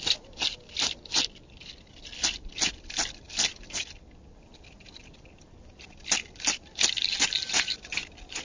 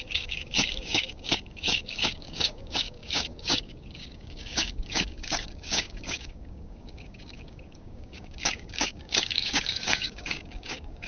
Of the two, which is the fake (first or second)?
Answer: second